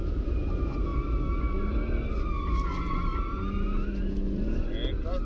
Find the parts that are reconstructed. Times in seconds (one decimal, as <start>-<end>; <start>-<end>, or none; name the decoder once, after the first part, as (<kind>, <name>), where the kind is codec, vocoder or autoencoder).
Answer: none